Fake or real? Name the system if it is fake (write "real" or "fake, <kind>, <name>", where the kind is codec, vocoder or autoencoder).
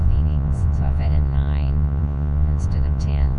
fake, vocoder, Vocos